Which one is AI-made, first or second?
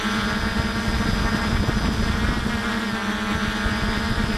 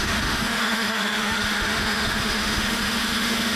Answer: second